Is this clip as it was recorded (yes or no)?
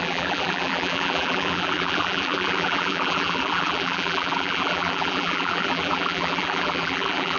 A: no